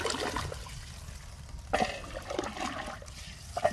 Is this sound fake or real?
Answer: real